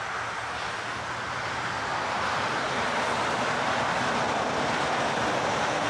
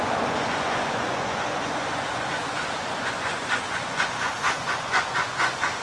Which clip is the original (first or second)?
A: first